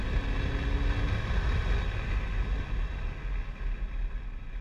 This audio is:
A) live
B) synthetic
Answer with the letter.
A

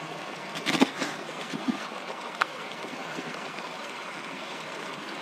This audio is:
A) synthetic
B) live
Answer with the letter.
A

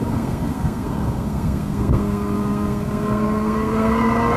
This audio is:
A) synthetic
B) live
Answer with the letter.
A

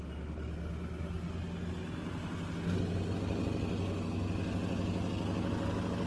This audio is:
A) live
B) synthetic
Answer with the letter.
A